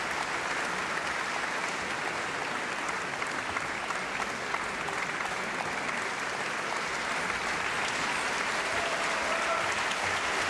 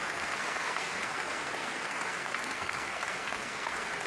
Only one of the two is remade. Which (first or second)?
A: second